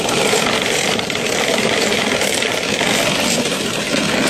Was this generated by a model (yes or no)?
no